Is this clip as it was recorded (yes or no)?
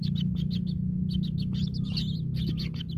yes